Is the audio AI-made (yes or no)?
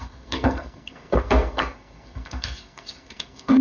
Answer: yes